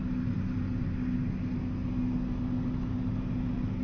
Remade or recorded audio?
recorded